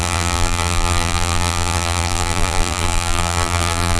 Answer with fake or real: fake